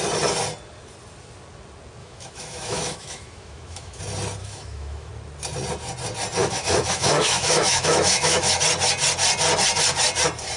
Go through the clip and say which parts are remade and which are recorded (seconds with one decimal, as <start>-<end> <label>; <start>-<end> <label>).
0.0-2.0 recorded; 2.0-4.0 remade; 4.0-4.4 recorded; 4.4-5.1 remade; 5.1-6.4 recorded; 6.4-8.6 remade; 8.6-10.6 recorded